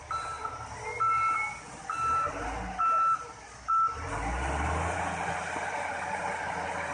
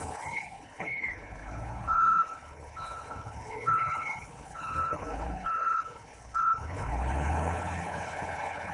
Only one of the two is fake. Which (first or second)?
second